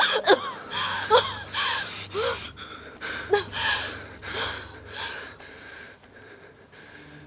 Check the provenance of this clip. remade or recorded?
recorded